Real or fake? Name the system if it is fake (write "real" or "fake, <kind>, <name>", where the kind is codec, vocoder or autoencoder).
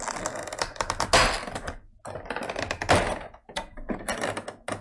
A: real